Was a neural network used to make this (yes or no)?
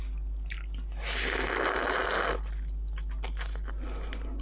no